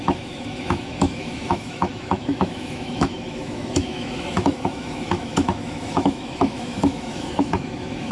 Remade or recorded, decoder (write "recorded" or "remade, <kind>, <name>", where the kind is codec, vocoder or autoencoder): remade, autoencoder, DAC-VAE